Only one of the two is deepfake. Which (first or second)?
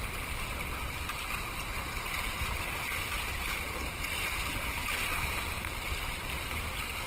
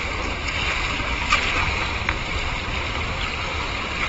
first